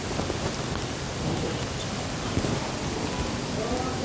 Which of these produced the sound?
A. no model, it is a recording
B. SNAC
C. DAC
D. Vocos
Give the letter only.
A